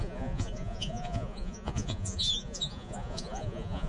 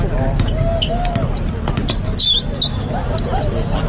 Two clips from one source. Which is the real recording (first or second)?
second